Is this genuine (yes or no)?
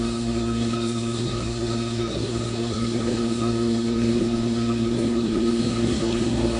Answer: no